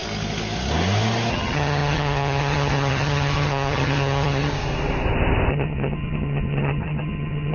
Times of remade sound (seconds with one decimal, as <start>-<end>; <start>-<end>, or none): 1.3-4.5; 5.5-7.5